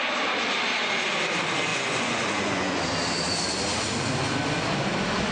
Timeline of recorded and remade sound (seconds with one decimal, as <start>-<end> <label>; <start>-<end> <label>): 0.0-1.7 recorded; 1.7-2.8 remade; 2.8-5.3 recorded